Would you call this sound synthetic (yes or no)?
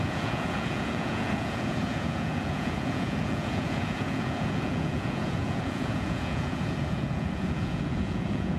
yes